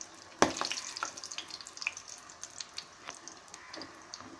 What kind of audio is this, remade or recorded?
recorded